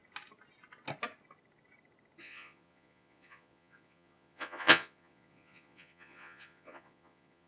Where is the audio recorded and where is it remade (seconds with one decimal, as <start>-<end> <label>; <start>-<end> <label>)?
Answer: 0.0-2.2 recorded; 2.2-7.5 remade